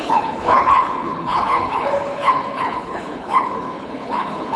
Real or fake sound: fake